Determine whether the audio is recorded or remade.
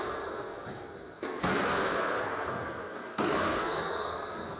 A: remade